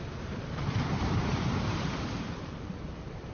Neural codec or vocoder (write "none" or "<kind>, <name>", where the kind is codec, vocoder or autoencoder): vocoder, BigVGAN v2